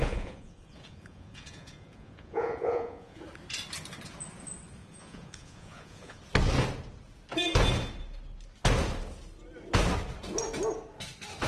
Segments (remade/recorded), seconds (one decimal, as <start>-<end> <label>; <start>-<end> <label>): 0.0-3.2 remade; 3.2-4.8 recorded; 4.8-6.2 remade; 6.2-11.5 recorded